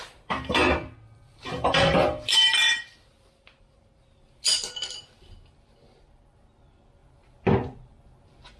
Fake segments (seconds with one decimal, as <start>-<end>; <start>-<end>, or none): none